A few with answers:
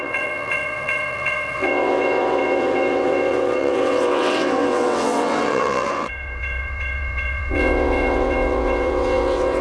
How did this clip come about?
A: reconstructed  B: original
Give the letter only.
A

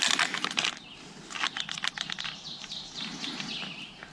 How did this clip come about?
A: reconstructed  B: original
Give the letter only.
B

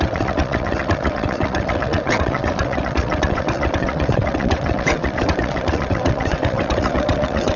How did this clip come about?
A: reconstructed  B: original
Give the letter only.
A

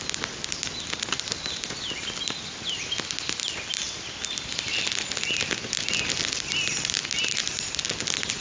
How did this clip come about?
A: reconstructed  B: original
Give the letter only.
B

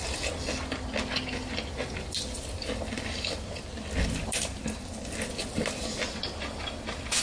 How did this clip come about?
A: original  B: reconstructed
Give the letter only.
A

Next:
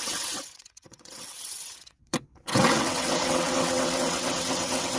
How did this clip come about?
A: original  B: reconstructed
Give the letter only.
B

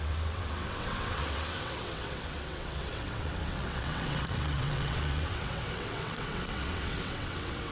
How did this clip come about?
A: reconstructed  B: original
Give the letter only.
A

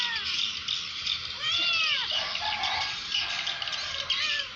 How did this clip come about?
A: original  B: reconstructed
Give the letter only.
A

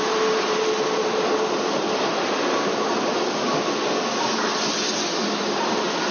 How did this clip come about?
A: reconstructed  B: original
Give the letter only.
B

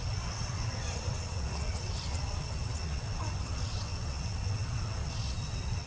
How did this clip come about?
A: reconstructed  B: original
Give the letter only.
A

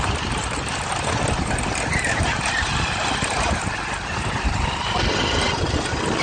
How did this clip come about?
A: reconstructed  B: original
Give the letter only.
B